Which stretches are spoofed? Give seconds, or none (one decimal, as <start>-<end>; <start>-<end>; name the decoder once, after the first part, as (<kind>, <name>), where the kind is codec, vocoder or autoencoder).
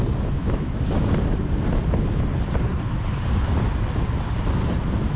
0.4-0.9 (autoencoder, DAC-VAE)